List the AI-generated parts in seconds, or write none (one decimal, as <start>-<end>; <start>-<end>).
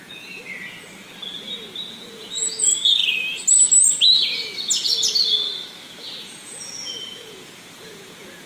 0.0-0.4; 1.9-3.0; 6.2-8.5